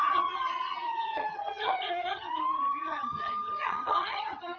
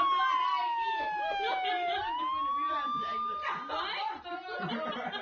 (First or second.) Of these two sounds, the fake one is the first